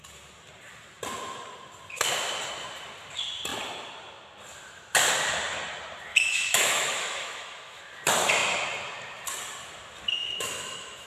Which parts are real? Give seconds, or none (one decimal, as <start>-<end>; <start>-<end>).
0.0-6.1; 7.8-10.2